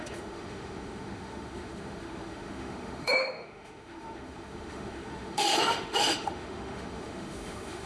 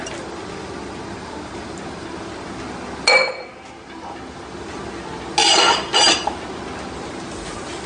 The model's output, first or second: first